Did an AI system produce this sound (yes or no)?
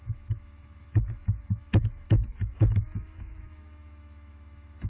yes